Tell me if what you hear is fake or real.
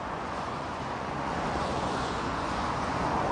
fake